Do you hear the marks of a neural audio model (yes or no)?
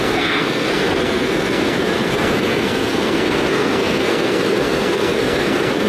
yes